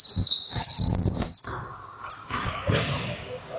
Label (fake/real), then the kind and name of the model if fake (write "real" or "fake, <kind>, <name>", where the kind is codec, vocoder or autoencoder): fake, codec, DAC